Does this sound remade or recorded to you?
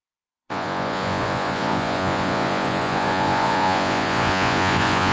remade